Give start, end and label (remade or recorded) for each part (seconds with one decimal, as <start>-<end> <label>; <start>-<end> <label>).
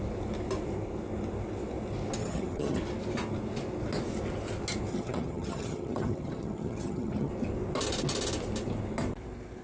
0.0-2.2 recorded; 2.2-2.8 remade; 2.8-4.9 recorded; 4.9-7.3 remade; 7.3-9.6 recorded